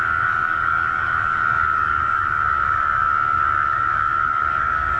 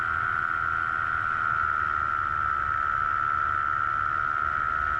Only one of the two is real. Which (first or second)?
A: second